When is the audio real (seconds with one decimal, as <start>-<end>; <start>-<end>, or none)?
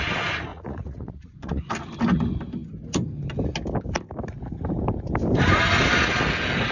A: 0.0-0.5; 1.7-6.7